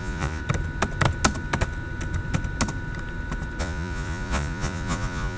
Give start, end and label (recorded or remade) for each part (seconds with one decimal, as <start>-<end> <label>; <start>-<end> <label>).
0.0-0.4 remade; 0.4-3.6 recorded; 3.6-5.4 remade